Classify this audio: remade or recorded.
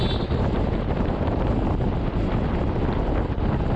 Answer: recorded